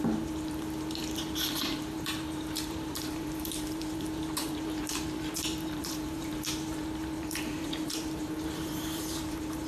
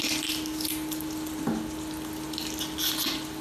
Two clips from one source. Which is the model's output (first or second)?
first